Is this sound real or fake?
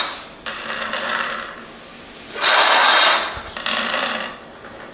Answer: real